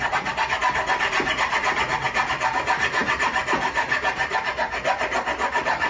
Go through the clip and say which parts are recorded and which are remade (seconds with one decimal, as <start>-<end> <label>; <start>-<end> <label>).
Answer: 0.0-5.9 recorded